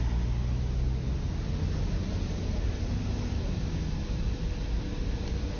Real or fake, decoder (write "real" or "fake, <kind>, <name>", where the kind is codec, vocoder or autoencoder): real